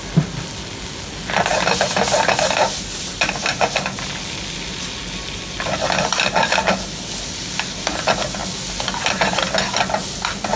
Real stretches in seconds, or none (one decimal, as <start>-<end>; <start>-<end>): 0.0-10.6